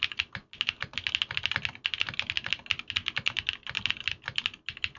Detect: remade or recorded recorded